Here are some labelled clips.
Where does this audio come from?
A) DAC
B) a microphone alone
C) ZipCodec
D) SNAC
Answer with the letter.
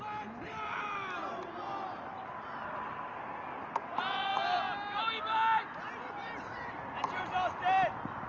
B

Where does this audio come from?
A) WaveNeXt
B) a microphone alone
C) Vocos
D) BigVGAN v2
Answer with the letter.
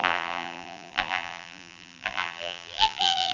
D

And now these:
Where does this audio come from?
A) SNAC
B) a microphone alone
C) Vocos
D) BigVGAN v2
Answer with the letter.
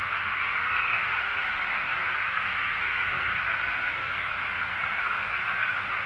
A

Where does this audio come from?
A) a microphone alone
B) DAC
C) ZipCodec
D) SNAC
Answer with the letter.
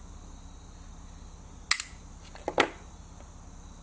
A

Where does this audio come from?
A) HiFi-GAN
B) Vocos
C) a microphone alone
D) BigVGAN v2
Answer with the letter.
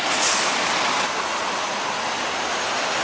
C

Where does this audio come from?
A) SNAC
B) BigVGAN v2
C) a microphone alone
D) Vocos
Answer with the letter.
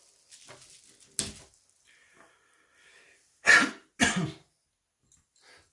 C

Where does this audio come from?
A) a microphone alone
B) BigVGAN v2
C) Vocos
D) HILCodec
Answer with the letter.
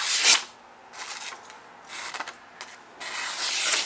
A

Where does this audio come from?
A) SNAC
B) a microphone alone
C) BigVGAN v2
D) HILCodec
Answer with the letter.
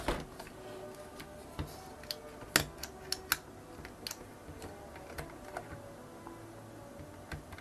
B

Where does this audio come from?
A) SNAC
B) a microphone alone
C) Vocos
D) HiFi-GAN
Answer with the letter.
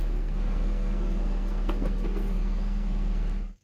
A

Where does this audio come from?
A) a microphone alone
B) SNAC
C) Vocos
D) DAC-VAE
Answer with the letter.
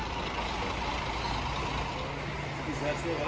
A